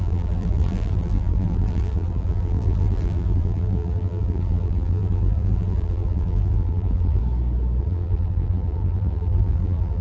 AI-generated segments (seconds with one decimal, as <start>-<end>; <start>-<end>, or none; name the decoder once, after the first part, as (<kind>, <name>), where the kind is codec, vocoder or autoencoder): 0.0-7.2 (vocoder, BigVGAN v2); 7.8-10.0